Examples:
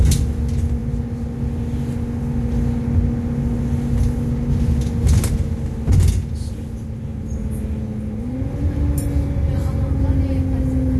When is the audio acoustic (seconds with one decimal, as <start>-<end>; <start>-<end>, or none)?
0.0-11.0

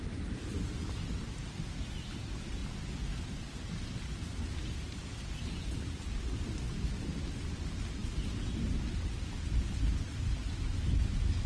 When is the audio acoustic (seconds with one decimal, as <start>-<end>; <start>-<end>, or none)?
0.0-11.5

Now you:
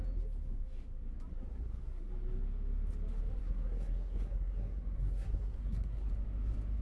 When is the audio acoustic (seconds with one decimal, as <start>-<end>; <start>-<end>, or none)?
0.0-1.3; 2.1-3.4; 6.1-6.8

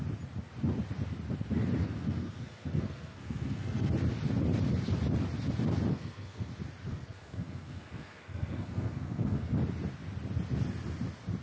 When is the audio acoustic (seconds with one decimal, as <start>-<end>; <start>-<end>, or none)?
0.0-1.8; 3.9-5.9; 6.5-6.9; 9.5-11.4